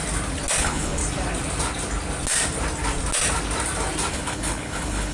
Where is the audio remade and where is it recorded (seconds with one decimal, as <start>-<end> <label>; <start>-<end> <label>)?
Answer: 0.0-0.6 recorded; 0.6-1.0 remade; 1.0-4.1 recorded; 4.1-5.1 remade